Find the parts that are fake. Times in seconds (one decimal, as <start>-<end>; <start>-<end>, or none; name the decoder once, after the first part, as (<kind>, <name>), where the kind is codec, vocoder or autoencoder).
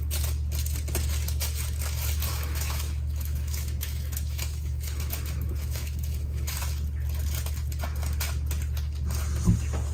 2.3-6.6 (autoencoder, DAC-VAE)